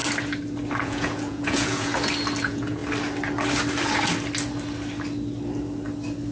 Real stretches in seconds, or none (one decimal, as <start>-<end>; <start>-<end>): 0.0-0.8; 1.9-2.4; 2.8-6.3